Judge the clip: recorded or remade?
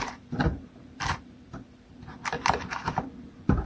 remade